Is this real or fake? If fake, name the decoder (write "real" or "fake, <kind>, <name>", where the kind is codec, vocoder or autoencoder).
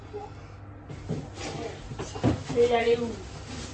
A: real